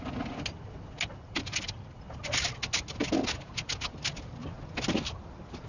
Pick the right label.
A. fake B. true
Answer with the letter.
B